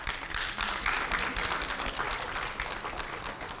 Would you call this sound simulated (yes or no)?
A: no